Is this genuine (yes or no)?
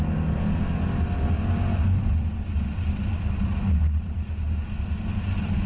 yes